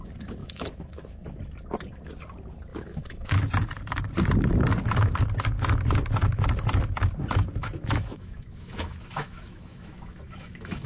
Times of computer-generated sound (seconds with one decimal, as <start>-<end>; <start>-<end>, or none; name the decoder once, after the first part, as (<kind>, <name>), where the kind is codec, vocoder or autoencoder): 0.4-1.4 (autoencoder, DAC-VAE); 2.7-3.4; 7.6-10.9